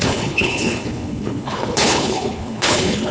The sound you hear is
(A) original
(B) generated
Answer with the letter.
B